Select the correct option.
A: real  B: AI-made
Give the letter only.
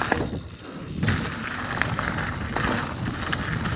A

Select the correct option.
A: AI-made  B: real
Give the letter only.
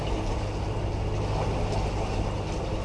B